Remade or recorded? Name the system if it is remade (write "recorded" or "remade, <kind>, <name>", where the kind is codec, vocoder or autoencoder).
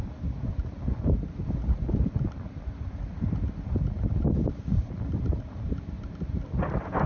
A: recorded